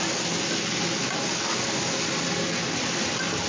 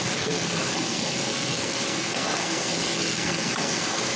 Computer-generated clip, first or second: second